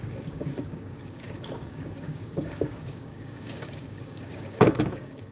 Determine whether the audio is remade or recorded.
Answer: remade